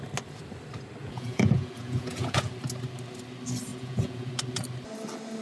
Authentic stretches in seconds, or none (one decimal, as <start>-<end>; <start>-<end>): 0.0-1.0; 2.5-3.7; 4.3-5.4